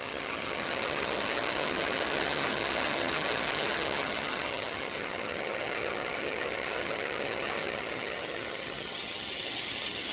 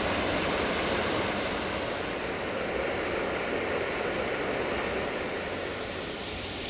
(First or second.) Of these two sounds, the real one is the second